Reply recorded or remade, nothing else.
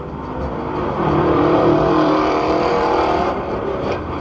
remade